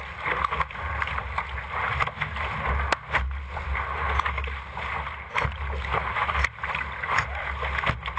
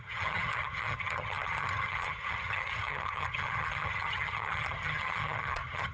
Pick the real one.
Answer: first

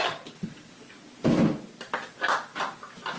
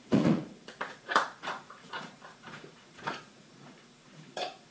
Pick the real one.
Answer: first